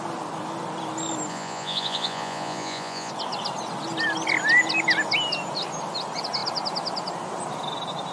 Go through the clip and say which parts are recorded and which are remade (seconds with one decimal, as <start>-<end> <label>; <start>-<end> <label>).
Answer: 0.0-1.3 recorded; 1.3-3.1 remade; 3.1-8.1 recorded